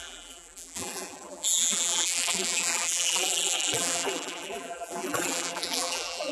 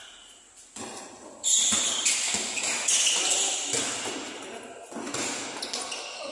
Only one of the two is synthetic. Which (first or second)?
first